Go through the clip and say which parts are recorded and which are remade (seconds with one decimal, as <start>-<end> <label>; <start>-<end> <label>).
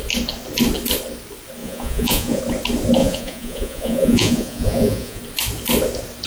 0.0-1.6 recorded; 1.6-2.4 remade; 2.4-3.0 recorded; 3.0-5.2 remade; 5.2-6.3 recorded